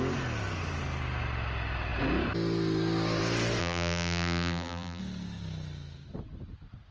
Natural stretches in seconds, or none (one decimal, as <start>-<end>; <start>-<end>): 0.0-3.6; 5.0-6.9